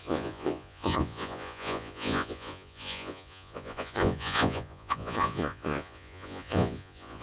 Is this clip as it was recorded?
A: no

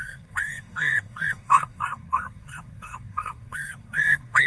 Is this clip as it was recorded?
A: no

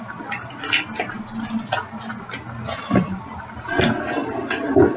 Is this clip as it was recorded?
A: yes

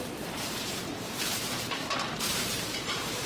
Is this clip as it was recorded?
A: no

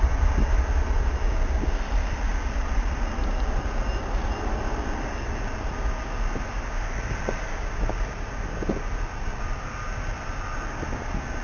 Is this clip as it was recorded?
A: yes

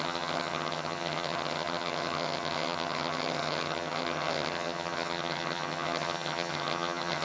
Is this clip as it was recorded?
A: no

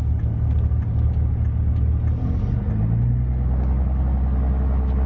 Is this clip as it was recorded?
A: yes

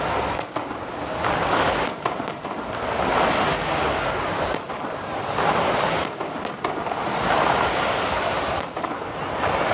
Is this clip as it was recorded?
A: yes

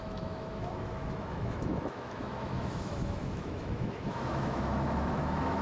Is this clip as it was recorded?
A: no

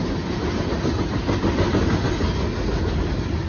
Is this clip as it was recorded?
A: yes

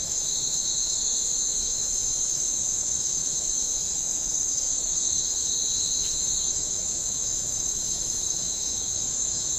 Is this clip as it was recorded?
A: no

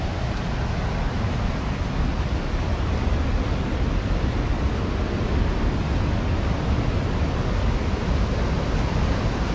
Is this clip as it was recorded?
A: yes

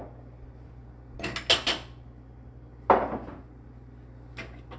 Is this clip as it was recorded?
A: yes